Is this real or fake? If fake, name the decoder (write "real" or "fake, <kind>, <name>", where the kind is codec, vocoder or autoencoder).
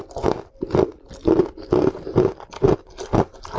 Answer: real